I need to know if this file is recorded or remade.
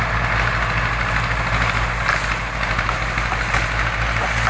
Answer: recorded